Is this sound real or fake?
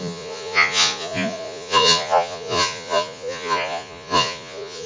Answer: fake